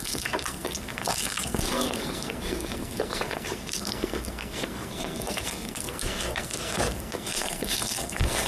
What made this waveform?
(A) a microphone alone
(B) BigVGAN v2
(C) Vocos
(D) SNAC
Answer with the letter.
D